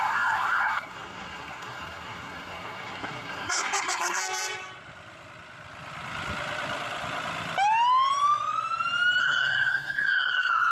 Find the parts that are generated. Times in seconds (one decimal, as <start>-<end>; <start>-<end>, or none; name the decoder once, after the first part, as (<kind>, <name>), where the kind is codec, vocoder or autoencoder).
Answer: 0.0-4.2 (codec, SNAC); 9.2-10.7